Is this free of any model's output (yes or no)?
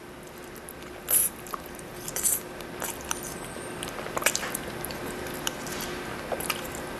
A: yes